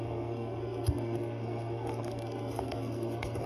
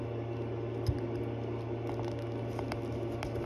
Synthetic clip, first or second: first